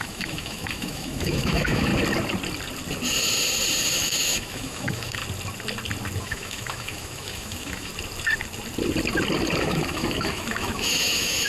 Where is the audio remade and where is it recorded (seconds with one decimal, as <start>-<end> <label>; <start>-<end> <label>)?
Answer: 0.0-1.9 remade; 1.9-3.9 recorded; 3.9-5.2 remade; 5.2-6.2 recorded; 6.2-7.9 remade; 7.9-9.6 recorded; 9.6-11.5 remade